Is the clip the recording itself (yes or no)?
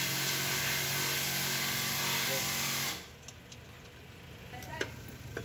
yes